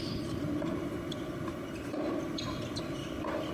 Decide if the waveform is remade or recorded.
recorded